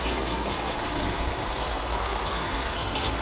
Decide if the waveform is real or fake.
fake